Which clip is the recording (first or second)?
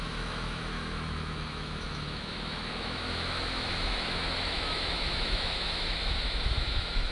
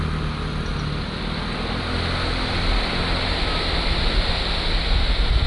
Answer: second